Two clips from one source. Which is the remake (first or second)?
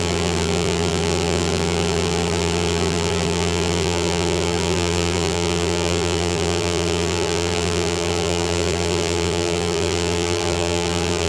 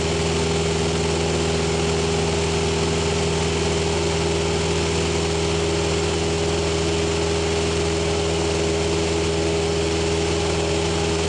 first